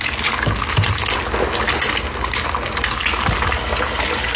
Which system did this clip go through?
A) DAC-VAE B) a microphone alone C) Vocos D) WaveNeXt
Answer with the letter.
B